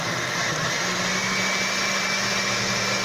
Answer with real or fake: real